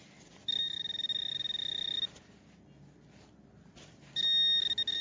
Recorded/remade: recorded